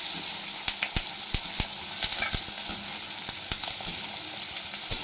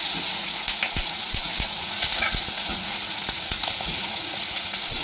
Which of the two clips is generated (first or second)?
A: second